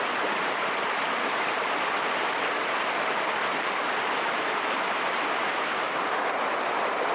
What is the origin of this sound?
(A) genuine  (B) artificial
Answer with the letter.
A